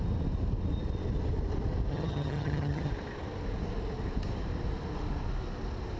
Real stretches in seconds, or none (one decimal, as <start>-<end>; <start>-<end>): 0.0-1.9; 2.9-6.0